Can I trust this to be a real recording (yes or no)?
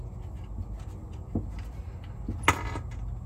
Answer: yes